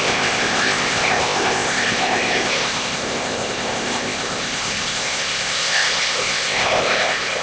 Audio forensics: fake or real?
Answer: fake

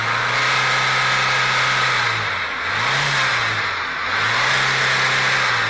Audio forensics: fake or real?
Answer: real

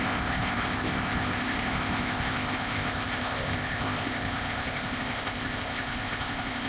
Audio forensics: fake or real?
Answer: fake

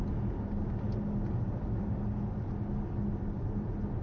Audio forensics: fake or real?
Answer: real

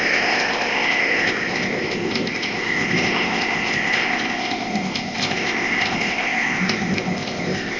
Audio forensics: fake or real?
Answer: fake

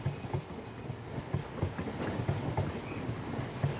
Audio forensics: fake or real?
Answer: real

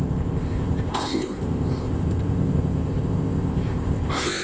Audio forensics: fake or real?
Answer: fake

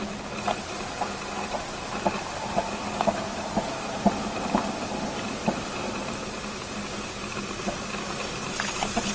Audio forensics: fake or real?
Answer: real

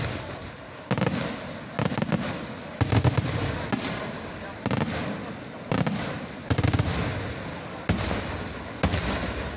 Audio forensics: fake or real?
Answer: real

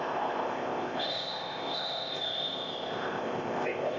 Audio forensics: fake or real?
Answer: fake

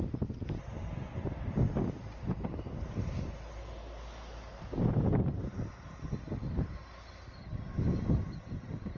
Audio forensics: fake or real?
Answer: real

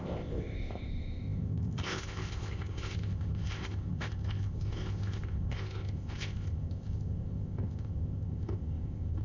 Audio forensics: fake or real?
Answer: fake